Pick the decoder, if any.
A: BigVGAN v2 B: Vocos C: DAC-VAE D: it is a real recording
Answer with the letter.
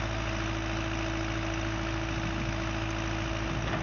D